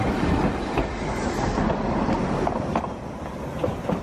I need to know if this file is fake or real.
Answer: real